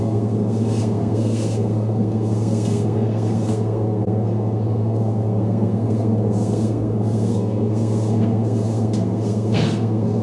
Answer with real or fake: fake